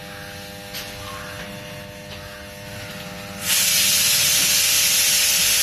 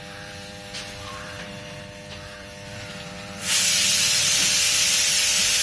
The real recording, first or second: first